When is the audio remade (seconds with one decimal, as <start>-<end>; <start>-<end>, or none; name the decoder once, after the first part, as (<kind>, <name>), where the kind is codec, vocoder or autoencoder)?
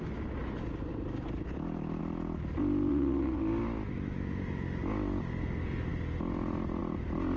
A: 2.9-3.4 (vocoder, WaveNeXt)